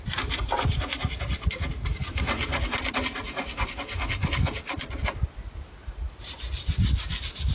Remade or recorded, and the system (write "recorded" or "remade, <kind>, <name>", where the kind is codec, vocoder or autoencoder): recorded